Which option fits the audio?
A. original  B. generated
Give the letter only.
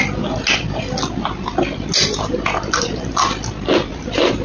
A